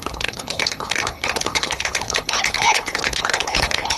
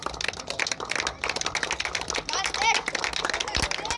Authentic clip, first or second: second